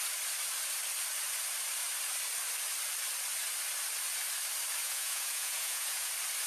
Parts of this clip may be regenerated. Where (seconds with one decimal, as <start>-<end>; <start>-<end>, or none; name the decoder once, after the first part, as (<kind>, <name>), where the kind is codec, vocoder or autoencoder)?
4.8-6.1 (vocoder, Vocos)